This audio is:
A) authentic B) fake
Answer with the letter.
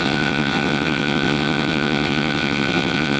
B